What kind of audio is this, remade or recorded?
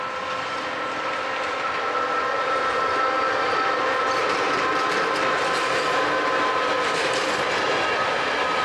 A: recorded